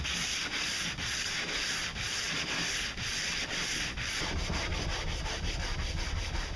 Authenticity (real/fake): real